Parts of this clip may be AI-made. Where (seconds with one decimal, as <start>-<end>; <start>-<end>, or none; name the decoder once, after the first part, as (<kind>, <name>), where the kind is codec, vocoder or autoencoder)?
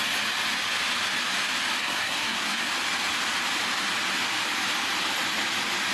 1.8-2.7 (codec, SNAC)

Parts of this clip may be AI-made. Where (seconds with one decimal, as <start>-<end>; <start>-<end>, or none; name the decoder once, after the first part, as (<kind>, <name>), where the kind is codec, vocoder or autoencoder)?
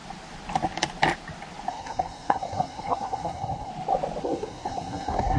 1.7-3.7 (codec, SNAC); 4.2-5.4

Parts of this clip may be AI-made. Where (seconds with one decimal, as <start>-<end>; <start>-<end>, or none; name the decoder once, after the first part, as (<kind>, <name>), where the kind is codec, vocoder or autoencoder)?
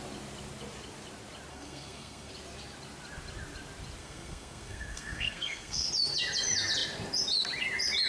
1.5-2.3 (codec, SNAC); 4.0-5.9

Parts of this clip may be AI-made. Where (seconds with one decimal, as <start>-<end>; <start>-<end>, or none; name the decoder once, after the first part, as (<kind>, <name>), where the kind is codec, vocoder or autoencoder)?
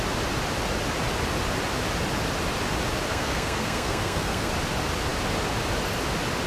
3.1-4.5 (codec, SNAC)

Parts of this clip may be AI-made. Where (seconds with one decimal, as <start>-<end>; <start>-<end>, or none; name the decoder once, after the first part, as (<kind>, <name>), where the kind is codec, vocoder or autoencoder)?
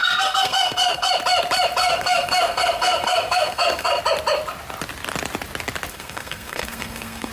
0.0-1.1 (codec, SNAC); 1.8-4.0; 5.9-7.3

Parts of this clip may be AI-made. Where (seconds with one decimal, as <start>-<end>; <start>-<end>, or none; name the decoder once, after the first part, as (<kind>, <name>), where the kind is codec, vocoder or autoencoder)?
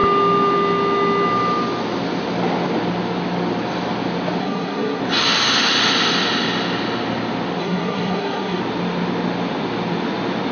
4.4-5.0 (codec, SNAC); 7.6-8.6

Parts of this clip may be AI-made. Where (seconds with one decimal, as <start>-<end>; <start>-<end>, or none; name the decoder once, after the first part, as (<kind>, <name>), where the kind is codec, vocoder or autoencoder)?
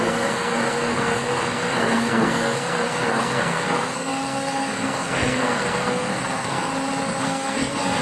0.0-6.7 (codec, SNAC); 7.2-8.0